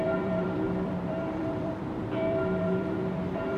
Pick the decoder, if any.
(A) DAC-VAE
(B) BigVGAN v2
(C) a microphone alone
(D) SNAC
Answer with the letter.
B